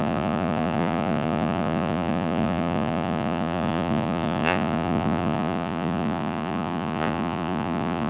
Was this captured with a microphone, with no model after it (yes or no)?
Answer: no